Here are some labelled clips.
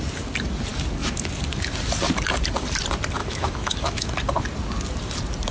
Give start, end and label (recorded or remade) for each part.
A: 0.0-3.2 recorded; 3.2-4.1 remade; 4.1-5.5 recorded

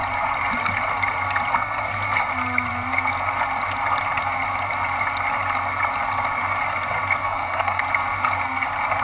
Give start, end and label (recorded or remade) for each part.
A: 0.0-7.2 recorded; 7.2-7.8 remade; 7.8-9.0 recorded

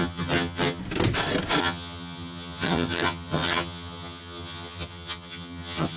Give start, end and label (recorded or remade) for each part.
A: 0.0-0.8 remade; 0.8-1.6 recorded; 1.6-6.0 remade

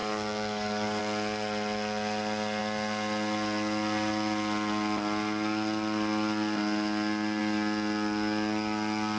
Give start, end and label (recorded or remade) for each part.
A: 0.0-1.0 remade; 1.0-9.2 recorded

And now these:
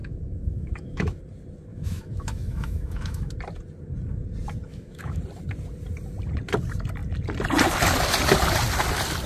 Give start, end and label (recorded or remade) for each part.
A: 0.0-1.2 remade; 1.2-1.7 recorded; 1.7-3.3 remade; 3.3-4.7 recorded; 4.7-5.2 remade; 5.2-9.3 recorded

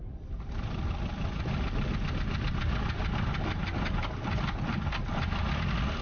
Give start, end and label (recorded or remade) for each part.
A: 0.0-6.0 recorded

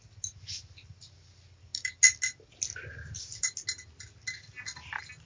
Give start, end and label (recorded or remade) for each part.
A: 0.0-5.3 recorded

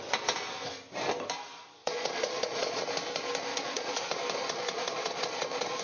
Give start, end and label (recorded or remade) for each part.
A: 0.0-1.8 recorded; 1.8-2.8 remade; 2.8-3.5 recorded; 3.5-4.0 remade; 4.0-4.4 recorded; 4.4-5.8 remade